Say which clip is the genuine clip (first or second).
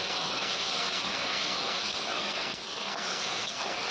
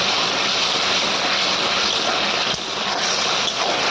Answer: second